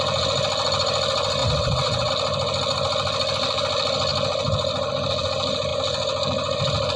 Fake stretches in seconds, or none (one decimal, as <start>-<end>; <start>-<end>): 1.4-2.1